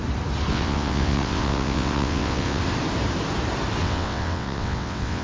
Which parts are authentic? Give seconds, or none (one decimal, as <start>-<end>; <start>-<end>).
0.0-0.5; 2.6-3.8